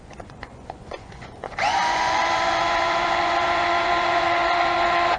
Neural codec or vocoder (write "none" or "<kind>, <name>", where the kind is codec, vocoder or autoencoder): vocoder, Vocos